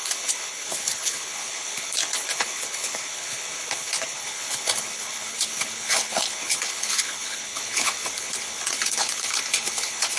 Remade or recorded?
remade